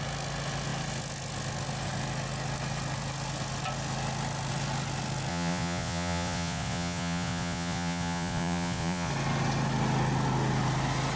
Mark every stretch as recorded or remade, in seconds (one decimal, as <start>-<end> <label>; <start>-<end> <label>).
0.0-5.3 recorded; 5.3-9.1 remade; 9.1-11.2 recorded